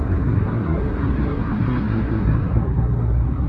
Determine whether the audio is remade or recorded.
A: remade